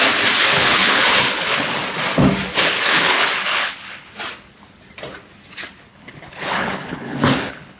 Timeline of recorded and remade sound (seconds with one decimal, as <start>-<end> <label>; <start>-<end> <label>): 0.0-0.4 recorded; 0.4-1.8 remade; 1.8-2.5 recorded; 2.5-4.1 remade; 4.1-5.9 recorded; 5.9-7.8 remade